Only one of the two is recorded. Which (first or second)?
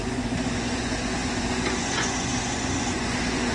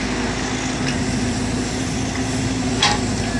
second